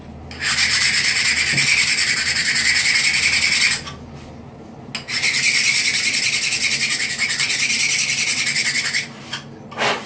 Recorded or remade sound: recorded